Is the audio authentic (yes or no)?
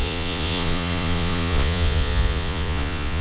no